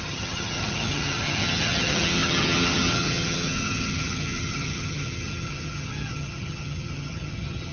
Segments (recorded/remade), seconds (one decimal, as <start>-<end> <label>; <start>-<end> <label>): 0.0-7.7 remade